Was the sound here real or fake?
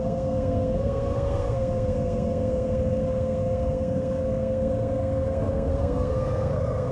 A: fake